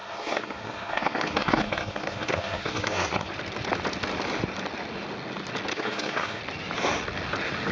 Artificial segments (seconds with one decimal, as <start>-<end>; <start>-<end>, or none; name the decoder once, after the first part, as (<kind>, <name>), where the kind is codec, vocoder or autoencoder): 0.0-3.3 (codec, SNAC); 5.7-6.4